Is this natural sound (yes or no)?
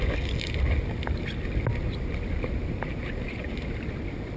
yes